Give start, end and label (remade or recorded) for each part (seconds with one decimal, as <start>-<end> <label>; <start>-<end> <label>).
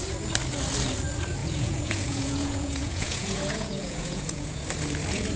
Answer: 0.0-1.4 recorded; 1.4-4.6 remade; 4.6-5.4 recorded